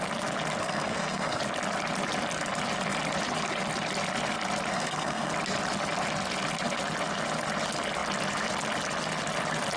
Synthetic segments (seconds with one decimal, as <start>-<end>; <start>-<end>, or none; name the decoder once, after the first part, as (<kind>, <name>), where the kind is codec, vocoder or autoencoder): 0.6-1.4 (codec, SNAC); 4.7-5.3